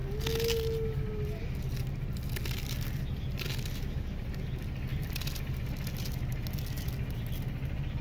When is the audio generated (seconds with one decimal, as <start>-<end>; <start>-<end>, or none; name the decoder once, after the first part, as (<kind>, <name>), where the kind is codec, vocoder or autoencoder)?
4.9-5.6 (vocoder, BigVGAN v2)

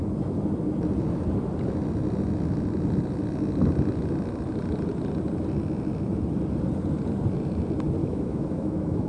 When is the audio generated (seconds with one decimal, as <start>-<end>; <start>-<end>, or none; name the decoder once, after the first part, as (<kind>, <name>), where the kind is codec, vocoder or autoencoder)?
8.0-9.1 (autoencoder, DAC-VAE)

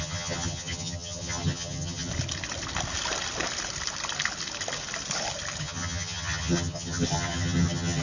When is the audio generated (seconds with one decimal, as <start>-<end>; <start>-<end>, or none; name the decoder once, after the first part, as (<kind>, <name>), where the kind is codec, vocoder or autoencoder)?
0.0-2.1 (vocoder, HiFi-GAN); 5.6-8.0